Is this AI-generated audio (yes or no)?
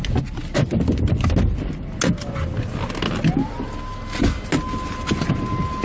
no